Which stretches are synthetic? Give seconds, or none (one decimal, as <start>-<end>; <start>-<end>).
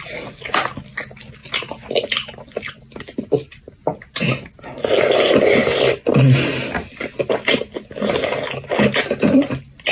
none